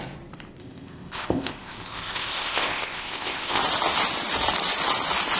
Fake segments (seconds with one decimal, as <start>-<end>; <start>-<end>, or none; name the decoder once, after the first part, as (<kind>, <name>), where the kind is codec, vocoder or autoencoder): 0.6-3.6 (codec, ZipCodec)